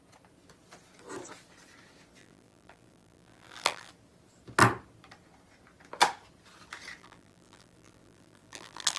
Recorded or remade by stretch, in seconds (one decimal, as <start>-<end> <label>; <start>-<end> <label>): 0.0-2.2 recorded; 2.2-3.9 remade; 3.9-7.0 recorded; 7.0-9.0 remade